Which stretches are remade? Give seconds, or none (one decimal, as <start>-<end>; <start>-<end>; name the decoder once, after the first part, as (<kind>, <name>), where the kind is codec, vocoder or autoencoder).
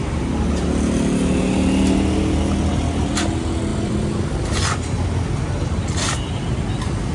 3.7-4.4 (vocoder, BigVGAN v2)